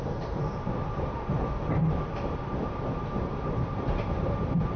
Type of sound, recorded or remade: remade